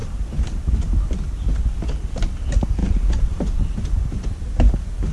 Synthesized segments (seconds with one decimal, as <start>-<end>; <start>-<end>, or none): 0.0-0.7; 2.8-4.0